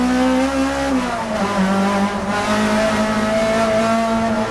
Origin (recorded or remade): recorded